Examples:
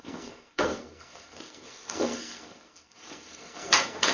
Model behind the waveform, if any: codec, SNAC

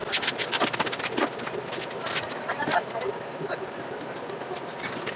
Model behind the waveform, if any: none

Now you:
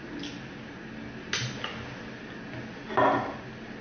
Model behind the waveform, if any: none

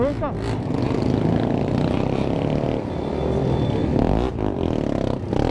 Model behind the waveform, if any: none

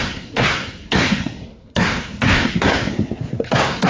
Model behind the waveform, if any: codec, SNAC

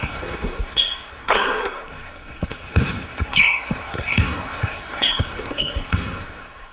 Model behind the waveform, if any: codec, SNAC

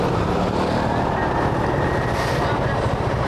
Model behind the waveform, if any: none